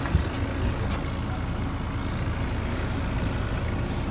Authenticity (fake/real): real